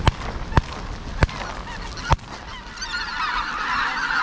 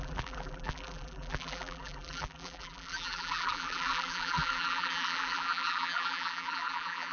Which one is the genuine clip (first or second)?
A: first